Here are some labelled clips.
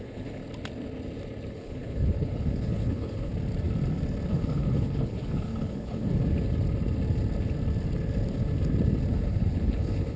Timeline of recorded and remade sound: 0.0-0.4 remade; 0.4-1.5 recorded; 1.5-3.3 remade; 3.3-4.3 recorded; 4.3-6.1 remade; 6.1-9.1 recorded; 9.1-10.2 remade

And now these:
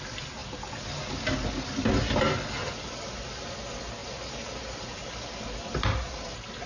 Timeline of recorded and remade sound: 0.0-6.7 recorded

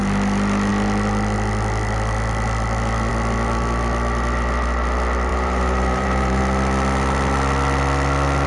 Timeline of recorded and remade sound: 0.0-5.3 recorded; 5.3-6.4 remade; 6.4-8.5 recorded

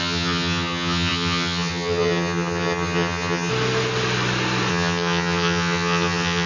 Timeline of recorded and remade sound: 0.0-3.5 remade; 3.5-4.7 recorded; 4.7-6.5 remade

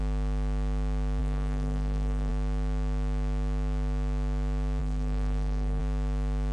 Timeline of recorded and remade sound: 0.0-1.2 recorded; 1.2-2.3 remade; 2.3-4.8 recorded; 4.8-5.8 remade; 5.8-6.5 recorded

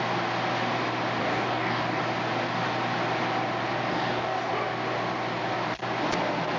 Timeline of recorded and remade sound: 0.0-1.2 recorded; 1.2-2.0 remade; 2.0-3.9 recorded; 3.9-4.5 remade; 4.5-6.6 recorded

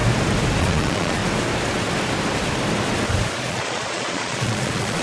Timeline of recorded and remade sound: 0.0-0.6 recorded; 0.6-1.2 remade; 1.2-3.5 recorded; 3.5-5.0 remade